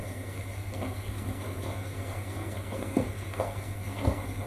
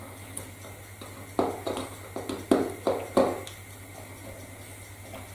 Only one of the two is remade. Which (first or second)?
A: first